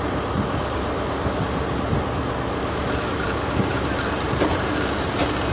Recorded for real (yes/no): yes